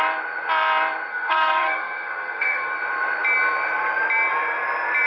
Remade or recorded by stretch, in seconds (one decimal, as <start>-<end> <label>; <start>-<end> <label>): 0.0-1.1 recorded; 1.1-2.7 remade; 2.7-5.1 recorded